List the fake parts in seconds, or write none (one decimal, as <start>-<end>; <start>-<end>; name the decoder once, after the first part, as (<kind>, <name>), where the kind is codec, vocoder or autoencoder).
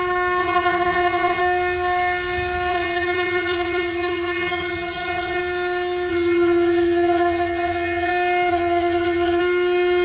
0.4-1.4 (vocoder, HiFi-GAN); 2.7-5.4; 6.1-8.1; 8.5-9.4